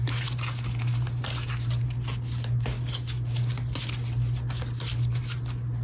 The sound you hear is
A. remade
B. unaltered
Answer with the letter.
B